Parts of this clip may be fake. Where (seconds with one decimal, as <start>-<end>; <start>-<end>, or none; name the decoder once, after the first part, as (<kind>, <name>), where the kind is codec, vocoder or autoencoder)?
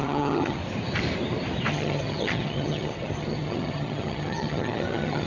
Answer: 0.0-0.6 (vocoder, HiFi-GAN); 1.7-5.3